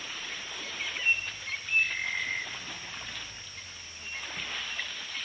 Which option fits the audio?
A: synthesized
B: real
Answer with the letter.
B